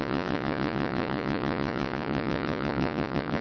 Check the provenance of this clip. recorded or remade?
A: remade